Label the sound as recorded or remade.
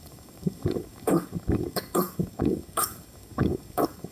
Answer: remade